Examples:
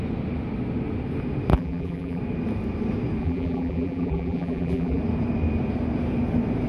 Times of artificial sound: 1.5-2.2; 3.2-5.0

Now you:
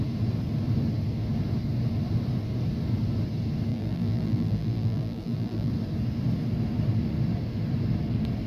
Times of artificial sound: 3.7-5.7

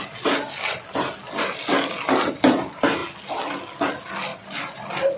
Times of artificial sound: 4.3-5.2

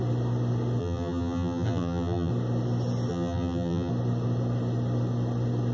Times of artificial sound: 0.8-2.3; 3.1-3.9

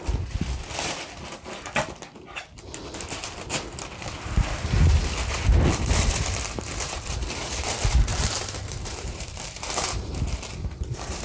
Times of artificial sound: 8.1-10.5

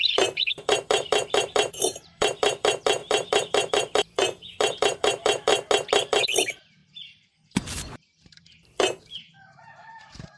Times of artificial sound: 0.0-5.5; 6.1-10.4

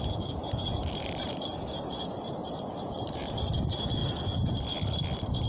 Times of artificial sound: 0.8-1.3; 2.4-3.3